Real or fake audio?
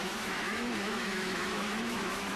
fake